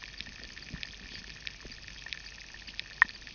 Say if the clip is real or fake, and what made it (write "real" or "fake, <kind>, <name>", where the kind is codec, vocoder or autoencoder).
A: real